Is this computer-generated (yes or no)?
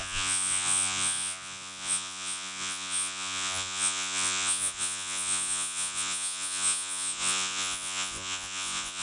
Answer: yes